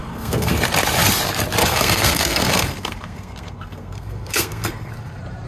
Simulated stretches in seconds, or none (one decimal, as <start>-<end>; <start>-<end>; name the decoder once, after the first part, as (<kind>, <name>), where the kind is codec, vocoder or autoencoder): 0.0-0.5 (codec, SNAC); 1.6-4.9